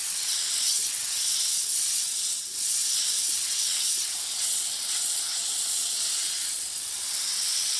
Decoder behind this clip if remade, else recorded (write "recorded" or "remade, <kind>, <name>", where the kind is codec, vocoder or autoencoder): remade, vocoder, WaveNeXt